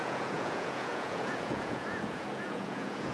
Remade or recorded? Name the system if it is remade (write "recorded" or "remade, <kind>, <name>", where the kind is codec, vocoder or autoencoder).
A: remade, vocoder, Vocos